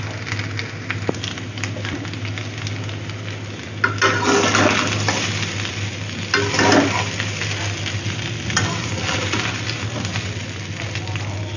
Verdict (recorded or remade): recorded